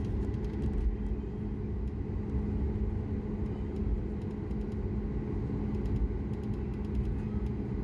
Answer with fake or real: real